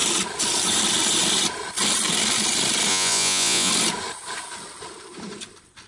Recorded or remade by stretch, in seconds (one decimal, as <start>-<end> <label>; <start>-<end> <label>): 0.0-2.9 recorded; 2.9-3.7 remade; 3.7-5.9 recorded